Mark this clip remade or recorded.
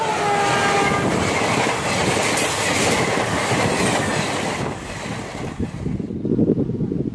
recorded